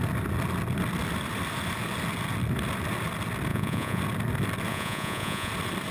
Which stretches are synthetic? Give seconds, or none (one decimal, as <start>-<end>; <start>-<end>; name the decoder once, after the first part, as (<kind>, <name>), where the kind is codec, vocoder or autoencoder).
3.5-4.0 (vocoder, Vocos); 4.7-5.5